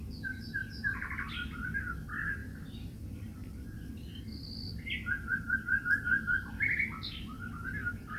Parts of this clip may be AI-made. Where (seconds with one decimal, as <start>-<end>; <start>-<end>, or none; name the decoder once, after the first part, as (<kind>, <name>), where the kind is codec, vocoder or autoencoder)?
2.4-3.9 (vocoder, BigVGAN v2); 5.3-6.5